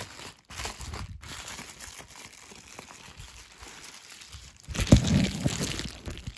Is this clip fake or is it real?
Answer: real